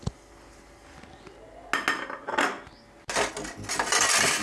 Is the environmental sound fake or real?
real